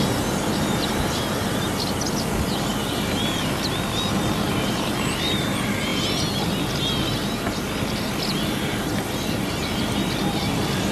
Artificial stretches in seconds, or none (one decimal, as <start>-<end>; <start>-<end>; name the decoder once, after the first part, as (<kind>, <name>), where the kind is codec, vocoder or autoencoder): none